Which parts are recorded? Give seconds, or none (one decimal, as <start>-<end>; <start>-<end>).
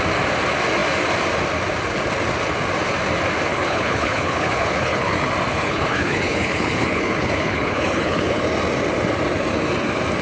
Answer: 0.0-3.5; 5.1-5.5; 8.4-10.2